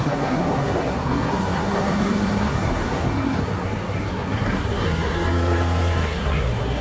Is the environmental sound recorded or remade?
remade